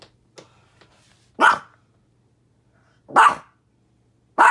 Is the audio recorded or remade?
recorded